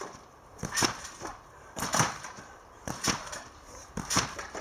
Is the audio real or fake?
fake